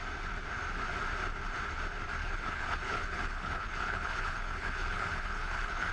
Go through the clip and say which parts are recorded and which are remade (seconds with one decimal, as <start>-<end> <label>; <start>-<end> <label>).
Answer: 0.0-2.2 recorded; 2.2-5.9 remade